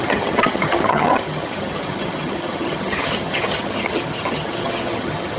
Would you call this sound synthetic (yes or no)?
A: yes